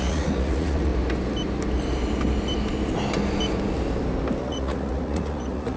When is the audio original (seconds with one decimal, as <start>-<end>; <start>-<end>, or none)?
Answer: 0.9-4.4

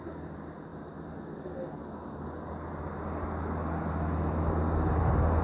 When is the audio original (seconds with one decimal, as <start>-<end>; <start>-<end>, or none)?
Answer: 0.0-5.4